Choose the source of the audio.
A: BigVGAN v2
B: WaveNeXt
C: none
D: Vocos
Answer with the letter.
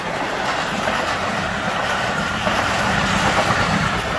A